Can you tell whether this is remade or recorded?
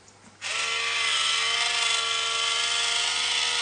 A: recorded